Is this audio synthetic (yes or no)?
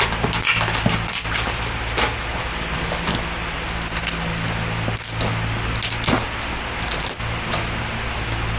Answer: no